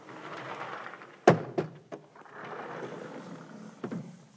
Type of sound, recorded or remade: recorded